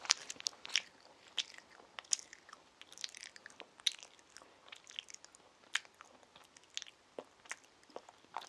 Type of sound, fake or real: real